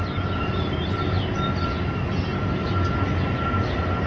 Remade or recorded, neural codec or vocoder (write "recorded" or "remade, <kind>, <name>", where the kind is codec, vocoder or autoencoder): recorded